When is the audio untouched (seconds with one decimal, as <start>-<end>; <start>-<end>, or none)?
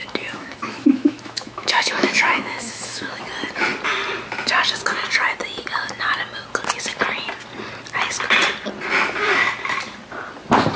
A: 3.2-10.8